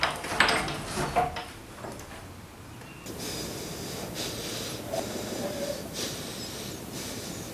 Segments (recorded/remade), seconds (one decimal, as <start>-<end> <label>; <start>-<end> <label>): 0.0-7.5 recorded